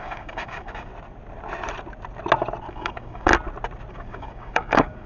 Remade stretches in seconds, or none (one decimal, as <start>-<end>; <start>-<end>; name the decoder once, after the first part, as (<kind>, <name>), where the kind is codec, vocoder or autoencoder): 0.0-0.9 (codec, DAC); 2.7-3.3; 3.9-5.1